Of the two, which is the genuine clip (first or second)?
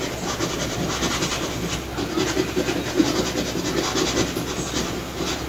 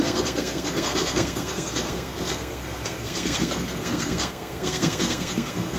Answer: first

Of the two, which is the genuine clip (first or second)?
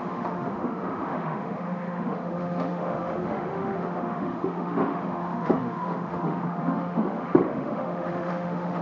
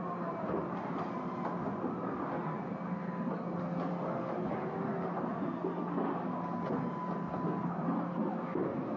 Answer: second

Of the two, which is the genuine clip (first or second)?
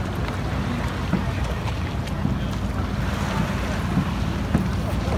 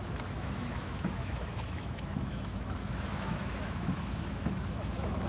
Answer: first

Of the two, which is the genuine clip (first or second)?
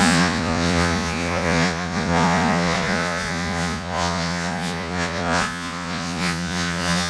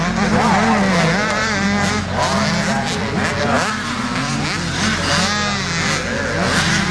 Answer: second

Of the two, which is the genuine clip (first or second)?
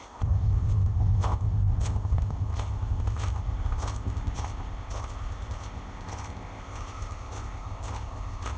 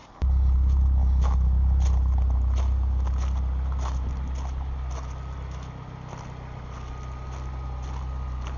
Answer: second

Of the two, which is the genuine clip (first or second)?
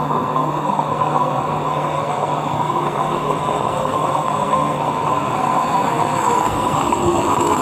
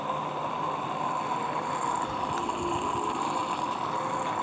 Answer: second